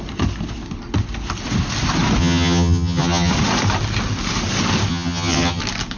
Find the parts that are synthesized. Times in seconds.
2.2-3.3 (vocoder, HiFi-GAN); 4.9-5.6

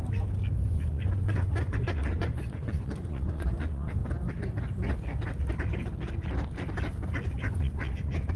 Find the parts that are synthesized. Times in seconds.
0.7-4.0 (vocoder, Vocos); 7.4-8.4

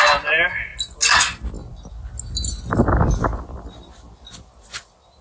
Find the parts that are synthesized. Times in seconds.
none

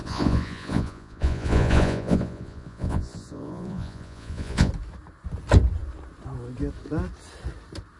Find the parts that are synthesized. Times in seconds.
0.0-4.7 (vocoder, Vocos)

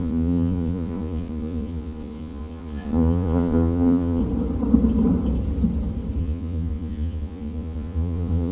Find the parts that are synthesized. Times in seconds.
0.0-4.2 (vocoder, Vocos); 6.2-8.5

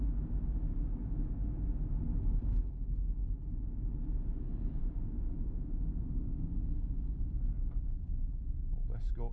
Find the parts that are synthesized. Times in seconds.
4.8-6.5 (autoencoder, DAC-VAE)